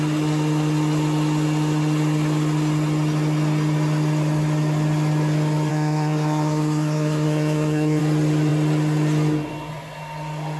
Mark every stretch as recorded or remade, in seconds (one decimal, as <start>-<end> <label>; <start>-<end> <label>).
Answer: 0.0-5.7 recorded; 5.7-8.0 remade; 8.0-10.6 recorded